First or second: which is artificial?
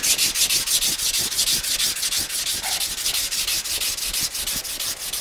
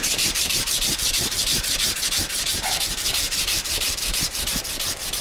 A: second